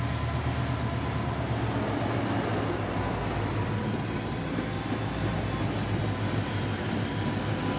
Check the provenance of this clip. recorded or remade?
recorded